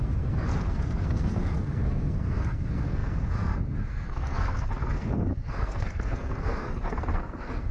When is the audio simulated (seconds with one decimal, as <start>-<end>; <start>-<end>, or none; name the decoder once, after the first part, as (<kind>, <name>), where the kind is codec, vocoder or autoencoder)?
0.0-7.7 (codec, SNAC)